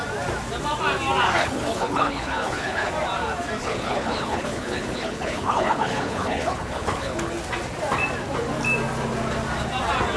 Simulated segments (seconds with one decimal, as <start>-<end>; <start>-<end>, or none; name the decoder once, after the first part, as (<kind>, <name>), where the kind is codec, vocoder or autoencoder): 1.4-2.9 (codec, HILCodec); 3.6-7.3